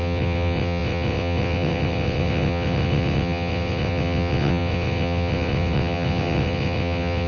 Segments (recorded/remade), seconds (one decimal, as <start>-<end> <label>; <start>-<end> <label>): 0.0-7.3 remade